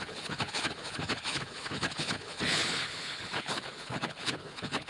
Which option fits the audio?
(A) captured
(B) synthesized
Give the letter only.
B